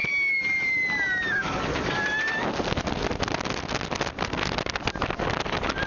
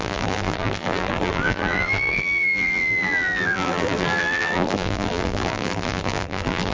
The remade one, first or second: second